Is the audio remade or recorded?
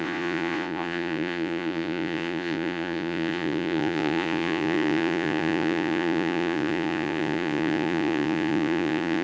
remade